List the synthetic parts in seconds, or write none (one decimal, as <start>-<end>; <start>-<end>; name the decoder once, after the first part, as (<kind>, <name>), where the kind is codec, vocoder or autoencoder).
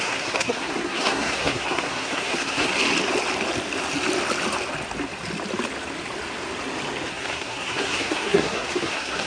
0.0-2.7 (codec, SNAC); 7.1-9.3